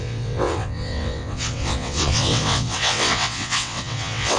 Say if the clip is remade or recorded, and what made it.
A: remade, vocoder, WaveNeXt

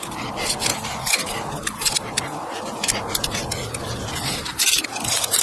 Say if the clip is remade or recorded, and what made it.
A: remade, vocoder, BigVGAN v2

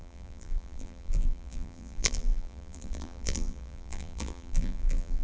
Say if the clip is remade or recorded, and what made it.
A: remade, vocoder, BigVGAN v2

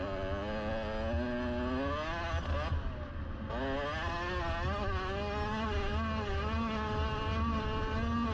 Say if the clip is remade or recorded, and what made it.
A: recorded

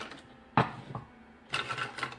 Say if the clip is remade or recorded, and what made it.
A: recorded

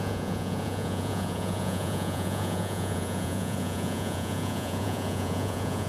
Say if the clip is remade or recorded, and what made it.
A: remade, vocoder, Vocos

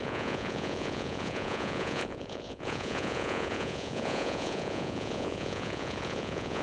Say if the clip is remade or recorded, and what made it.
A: remade, vocoder, Vocos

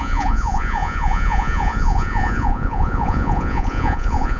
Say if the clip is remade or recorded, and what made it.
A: remade, vocoder, Vocos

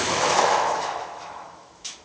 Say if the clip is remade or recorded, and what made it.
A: remade, autoencoder, DAC-VAE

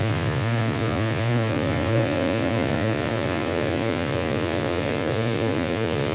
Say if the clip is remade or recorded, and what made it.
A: remade, vocoder, Vocos